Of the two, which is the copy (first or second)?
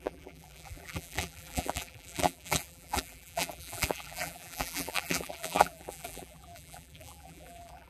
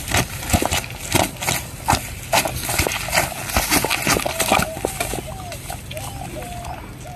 first